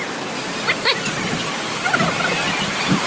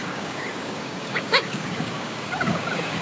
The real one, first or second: first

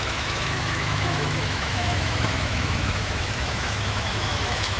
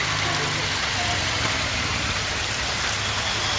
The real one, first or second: second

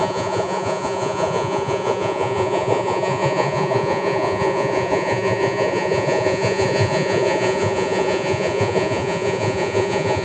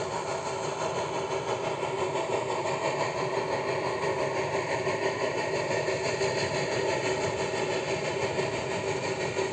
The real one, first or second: second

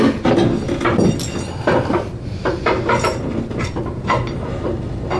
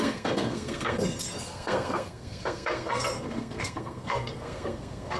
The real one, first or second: first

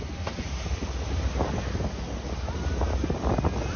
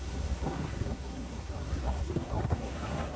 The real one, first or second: first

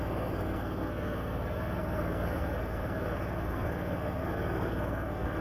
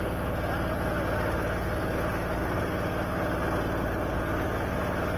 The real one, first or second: second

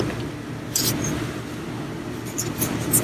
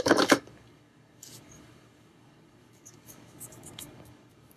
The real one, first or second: first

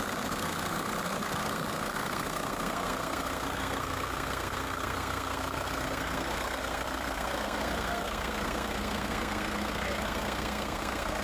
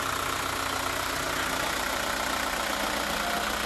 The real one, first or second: second